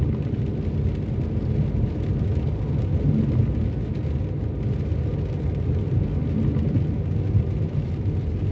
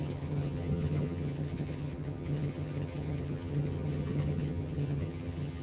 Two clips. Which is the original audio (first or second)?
first